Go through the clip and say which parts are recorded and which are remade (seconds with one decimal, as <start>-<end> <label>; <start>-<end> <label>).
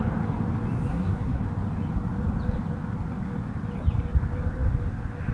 0.0-0.9 recorded; 0.9-1.4 remade; 1.4-5.3 recorded